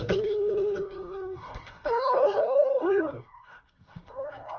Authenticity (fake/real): fake